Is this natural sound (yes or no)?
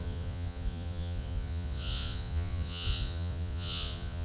no